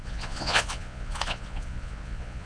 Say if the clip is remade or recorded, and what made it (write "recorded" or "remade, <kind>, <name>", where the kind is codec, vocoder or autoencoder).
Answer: remade, vocoder, Vocos